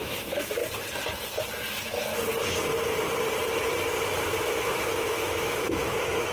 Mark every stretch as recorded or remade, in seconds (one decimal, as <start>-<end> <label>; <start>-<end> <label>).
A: 0.0-0.6 remade; 0.6-4.4 recorded; 4.4-6.3 remade